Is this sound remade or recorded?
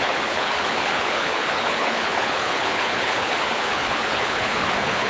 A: remade